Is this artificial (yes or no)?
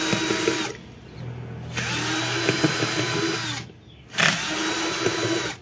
no